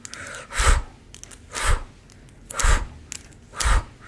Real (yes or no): yes